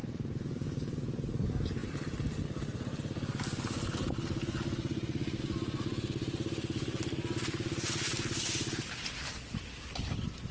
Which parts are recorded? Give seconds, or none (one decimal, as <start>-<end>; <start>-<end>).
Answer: 0.0-10.5